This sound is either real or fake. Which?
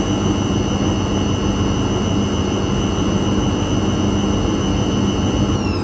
real